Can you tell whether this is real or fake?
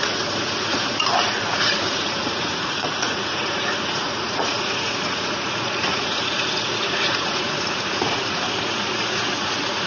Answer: fake